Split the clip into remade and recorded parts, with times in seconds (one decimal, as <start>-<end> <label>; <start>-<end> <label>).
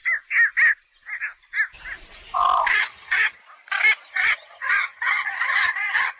0.0-2.7 recorded; 2.7-3.4 remade; 3.4-4.1 recorded; 4.1-6.2 remade